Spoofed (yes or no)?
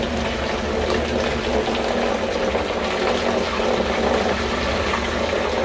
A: no